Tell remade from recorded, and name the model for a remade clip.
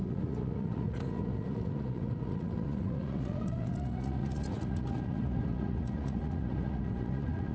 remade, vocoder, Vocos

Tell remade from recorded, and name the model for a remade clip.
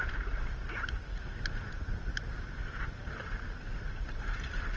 recorded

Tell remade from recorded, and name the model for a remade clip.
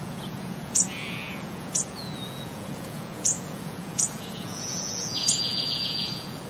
remade, vocoder, Vocos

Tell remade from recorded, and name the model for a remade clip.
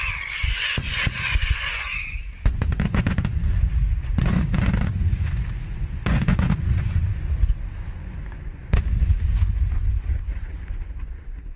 remade, vocoder, Vocos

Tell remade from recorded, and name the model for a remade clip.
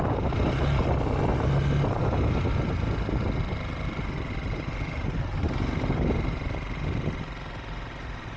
recorded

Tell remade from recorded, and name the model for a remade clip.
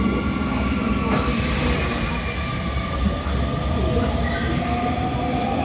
recorded